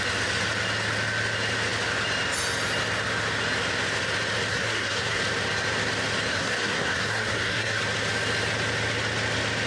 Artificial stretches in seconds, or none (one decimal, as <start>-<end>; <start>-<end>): 4.5-5.2; 6.3-7.8